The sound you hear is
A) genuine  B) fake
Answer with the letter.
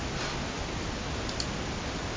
A